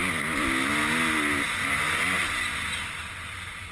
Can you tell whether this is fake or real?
real